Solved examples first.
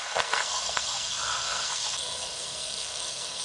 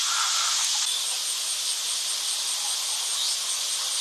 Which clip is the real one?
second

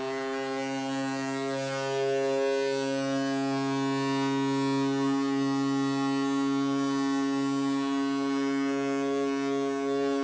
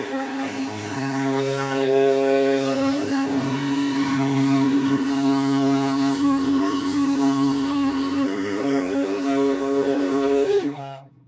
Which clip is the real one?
first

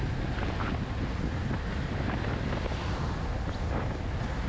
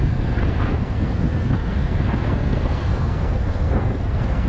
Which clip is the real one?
first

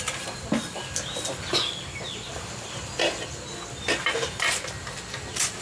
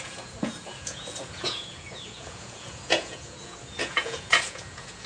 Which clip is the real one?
first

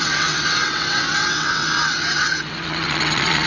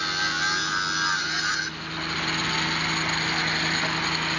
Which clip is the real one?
second